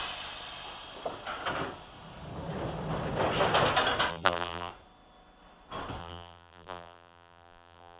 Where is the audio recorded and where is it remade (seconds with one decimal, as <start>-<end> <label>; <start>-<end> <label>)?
0.0-4.1 recorded; 4.1-4.7 remade; 4.7-6.0 recorded; 6.0-8.0 remade